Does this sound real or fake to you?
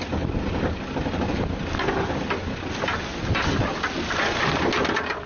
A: real